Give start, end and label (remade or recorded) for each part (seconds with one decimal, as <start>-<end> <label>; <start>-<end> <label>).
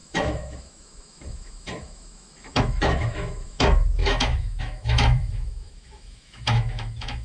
0.0-7.2 remade